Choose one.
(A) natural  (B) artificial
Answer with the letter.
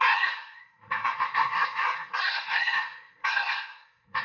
B